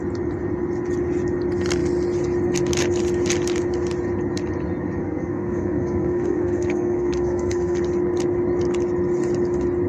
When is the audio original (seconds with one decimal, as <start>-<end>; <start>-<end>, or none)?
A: 0.0-5.0; 7.8-9.9